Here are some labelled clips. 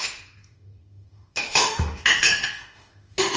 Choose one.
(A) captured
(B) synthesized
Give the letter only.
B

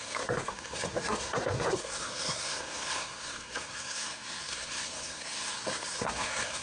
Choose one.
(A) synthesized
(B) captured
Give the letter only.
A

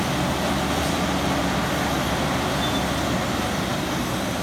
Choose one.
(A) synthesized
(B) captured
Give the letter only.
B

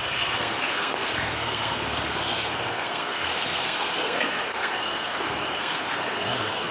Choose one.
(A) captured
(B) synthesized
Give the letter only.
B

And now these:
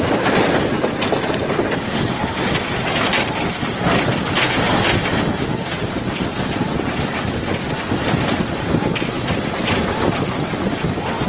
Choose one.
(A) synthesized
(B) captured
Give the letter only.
B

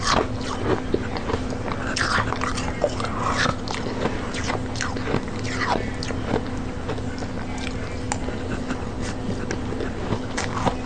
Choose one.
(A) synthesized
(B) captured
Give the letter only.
B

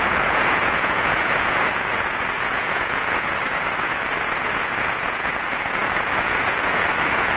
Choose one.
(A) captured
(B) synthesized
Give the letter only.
B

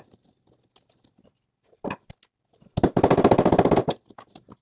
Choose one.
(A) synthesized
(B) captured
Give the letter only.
B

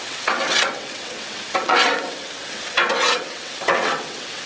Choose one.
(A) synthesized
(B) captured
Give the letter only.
A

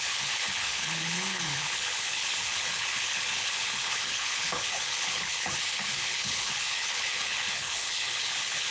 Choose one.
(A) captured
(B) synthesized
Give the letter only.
B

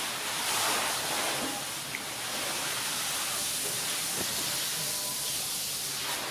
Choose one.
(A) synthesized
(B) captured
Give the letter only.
B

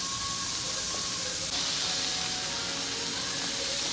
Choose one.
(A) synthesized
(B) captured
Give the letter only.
B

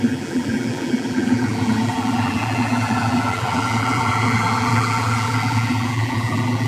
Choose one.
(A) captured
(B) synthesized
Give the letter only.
B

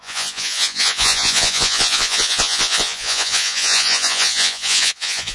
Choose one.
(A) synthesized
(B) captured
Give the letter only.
A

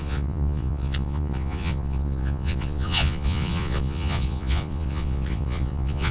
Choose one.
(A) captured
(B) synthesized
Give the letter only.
B